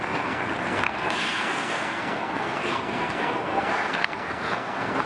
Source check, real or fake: fake